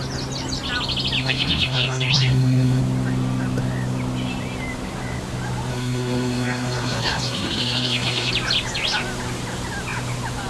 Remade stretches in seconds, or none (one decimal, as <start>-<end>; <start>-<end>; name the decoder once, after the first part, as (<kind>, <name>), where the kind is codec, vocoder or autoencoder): 1.2-2.8 (codec, SNAC); 5.7-8.3